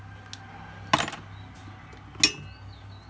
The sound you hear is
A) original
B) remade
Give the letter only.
A